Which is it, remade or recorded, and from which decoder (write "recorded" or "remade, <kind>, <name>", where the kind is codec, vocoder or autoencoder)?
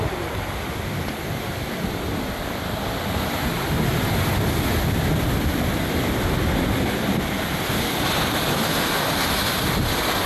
recorded